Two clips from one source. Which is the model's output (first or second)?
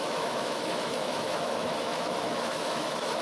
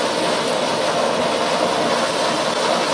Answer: first